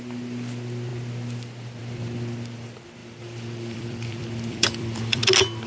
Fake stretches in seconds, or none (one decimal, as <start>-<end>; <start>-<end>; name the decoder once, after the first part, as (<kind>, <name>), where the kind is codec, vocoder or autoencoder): 3.0-5.2 (vocoder, BigVGAN v2)